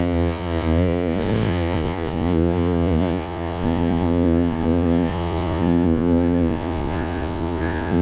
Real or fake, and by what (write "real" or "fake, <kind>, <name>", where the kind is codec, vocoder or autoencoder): fake, vocoder, Vocos